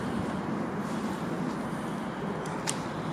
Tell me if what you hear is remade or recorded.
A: recorded